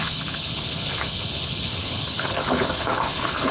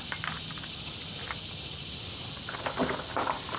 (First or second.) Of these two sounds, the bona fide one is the second